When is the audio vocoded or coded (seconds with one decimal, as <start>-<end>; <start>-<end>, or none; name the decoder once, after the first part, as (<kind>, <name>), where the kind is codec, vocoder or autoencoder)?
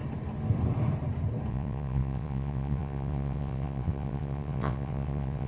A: 1.5-5.5 (vocoder, WaveNeXt)